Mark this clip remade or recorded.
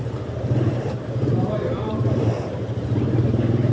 remade